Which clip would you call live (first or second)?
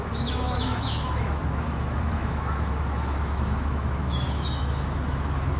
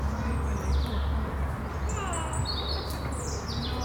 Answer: second